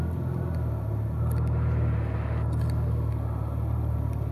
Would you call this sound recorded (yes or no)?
yes